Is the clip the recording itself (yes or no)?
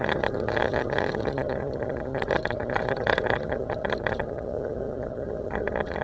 no